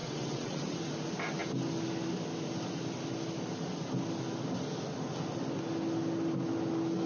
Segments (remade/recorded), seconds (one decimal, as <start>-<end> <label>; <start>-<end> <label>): 0.0-0.8 remade; 0.8-7.1 recorded